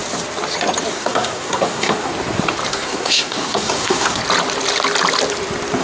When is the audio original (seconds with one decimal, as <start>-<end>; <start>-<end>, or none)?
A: 0.0-0.9; 2.1-2.7; 4.2-5.8